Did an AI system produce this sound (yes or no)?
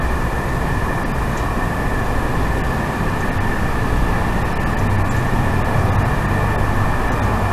no